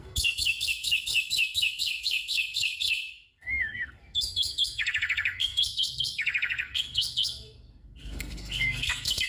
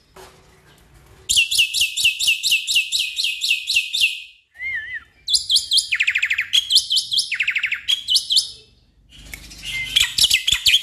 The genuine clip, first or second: second